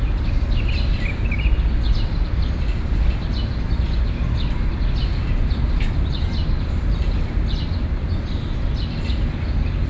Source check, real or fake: real